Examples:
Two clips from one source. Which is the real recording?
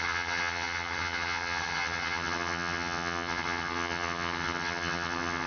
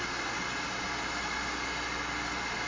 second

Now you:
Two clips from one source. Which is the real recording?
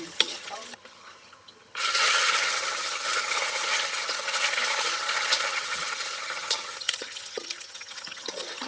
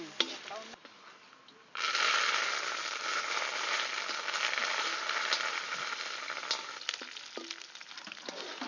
second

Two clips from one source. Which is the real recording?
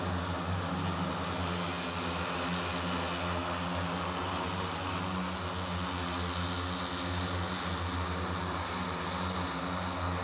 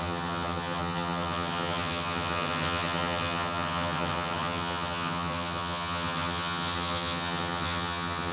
first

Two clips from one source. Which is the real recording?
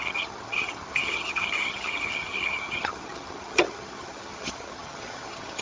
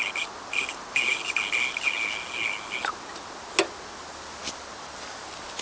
second